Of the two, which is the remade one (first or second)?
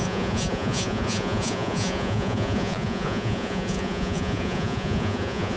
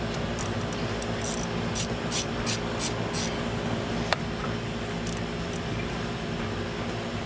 first